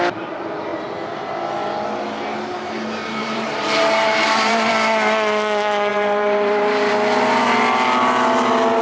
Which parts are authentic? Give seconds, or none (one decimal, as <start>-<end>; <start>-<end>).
0.0-3.2; 4.7-5.9; 6.9-8.8